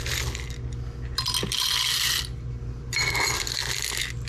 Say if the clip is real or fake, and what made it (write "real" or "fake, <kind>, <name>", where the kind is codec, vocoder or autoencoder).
real